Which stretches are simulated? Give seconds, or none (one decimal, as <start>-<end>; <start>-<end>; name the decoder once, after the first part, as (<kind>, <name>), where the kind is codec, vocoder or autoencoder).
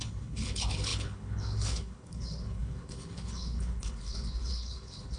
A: 0.0-5.2 (codec, HILCodec)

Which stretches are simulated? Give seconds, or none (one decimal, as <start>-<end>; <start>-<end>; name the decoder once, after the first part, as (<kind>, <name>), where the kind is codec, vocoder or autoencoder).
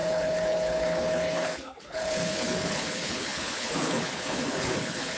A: 0.0-5.2 (codec, HILCodec)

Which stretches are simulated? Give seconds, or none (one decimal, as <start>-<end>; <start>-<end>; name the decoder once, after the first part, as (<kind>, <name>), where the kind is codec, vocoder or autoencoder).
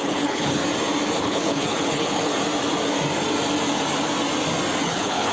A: 0.0-0.6 (codec, HILCodec); 1.2-2.3; 4.8-5.3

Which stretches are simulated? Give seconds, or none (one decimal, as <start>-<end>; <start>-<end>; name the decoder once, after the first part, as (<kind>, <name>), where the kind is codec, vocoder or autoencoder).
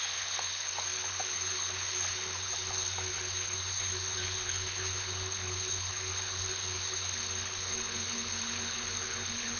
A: 0.0-9.6 (codec, HILCodec)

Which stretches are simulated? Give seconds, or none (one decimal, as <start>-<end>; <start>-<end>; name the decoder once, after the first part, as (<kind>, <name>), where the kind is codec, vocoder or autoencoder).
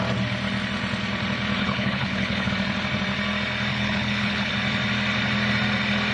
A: 1.6-2.5 (codec, HILCodec); 3.7-4.5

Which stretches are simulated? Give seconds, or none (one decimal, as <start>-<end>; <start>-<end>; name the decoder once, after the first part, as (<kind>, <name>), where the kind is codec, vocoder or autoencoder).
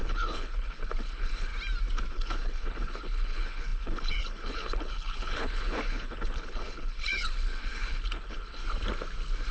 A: 0.0-1.5 (codec, HILCodec); 2.1-8.6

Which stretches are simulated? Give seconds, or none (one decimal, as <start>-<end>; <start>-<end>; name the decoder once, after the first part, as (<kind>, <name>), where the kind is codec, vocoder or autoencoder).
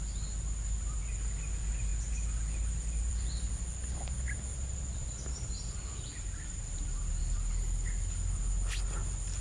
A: none